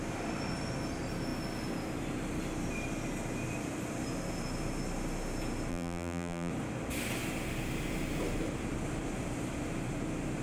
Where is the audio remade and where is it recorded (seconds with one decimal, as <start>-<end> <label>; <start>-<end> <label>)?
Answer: 0.0-5.7 recorded; 5.7-6.5 remade; 6.5-10.4 recorded